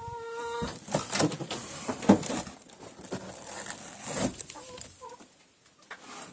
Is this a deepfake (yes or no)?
no